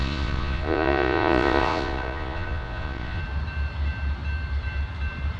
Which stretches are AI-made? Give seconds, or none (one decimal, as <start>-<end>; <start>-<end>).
0.0-3.2